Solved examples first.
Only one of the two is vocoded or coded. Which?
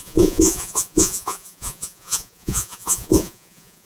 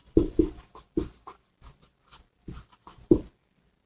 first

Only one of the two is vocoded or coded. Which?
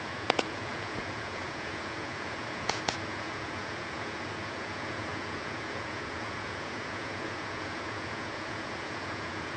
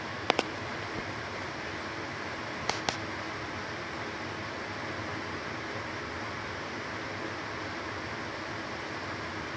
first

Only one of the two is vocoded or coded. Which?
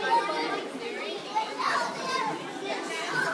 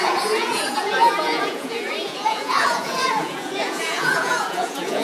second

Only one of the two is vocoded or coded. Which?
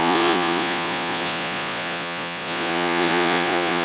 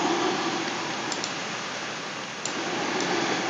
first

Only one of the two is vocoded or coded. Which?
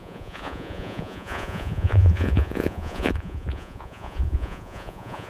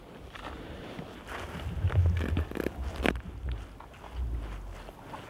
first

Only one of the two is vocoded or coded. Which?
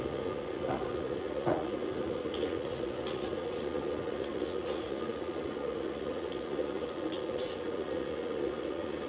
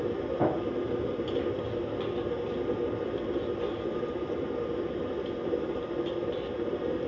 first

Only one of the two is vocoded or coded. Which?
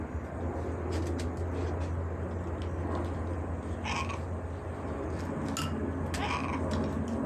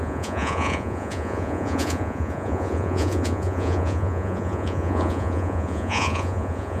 second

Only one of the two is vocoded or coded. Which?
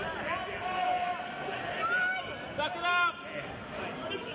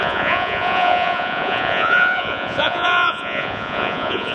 second